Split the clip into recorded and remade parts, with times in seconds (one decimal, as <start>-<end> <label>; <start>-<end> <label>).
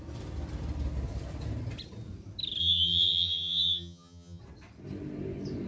0.0-2.6 recorded; 2.6-4.4 remade; 4.4-5.7 recorded